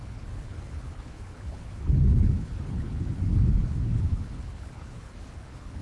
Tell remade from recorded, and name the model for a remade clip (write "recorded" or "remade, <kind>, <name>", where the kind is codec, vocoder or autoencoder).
remade, codec, HILCodec